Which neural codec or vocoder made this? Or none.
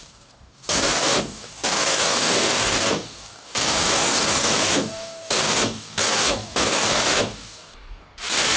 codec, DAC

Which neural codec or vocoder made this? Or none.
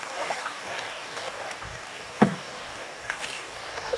codec, DAC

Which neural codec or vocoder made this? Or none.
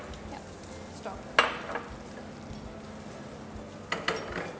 none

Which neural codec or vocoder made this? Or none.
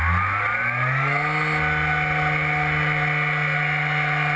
none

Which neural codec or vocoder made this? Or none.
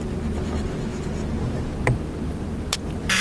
none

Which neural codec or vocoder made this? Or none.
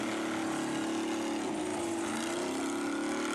none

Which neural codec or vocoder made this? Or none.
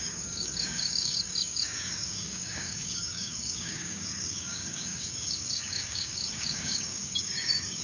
codec, DAC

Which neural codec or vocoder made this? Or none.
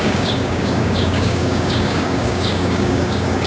codec, DAC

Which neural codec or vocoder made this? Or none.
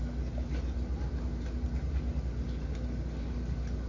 none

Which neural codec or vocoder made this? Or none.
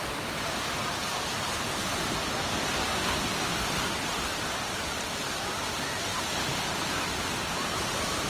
none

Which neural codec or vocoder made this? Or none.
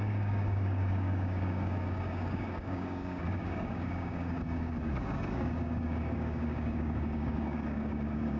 codec, DAC